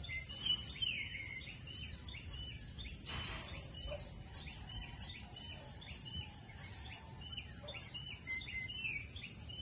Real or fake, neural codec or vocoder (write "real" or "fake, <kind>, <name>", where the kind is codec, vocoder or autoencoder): fake, vocoder, BigVGAN v2